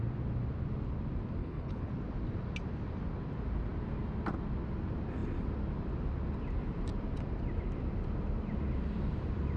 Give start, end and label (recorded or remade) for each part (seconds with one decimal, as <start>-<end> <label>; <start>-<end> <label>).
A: 0.0-1.4 recorded; 1.4-1.9 remade; 1.9-9.6 recorded